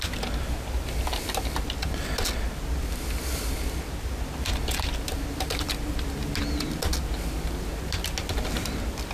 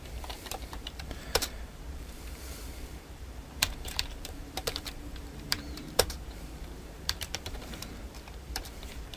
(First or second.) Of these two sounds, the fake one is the second